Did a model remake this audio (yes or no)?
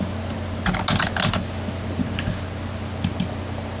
no